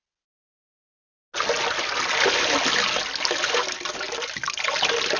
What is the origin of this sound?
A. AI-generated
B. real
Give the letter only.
B